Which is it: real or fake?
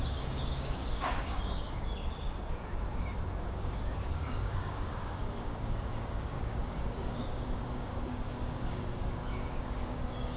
fake